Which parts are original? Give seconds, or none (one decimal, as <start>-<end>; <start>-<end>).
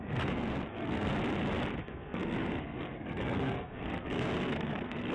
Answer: 1.1-1.8